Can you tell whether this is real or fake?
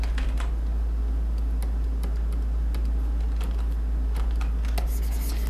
real